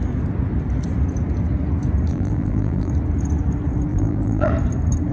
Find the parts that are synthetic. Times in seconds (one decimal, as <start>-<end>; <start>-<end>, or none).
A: 2.1-2.9; 3.9-4.5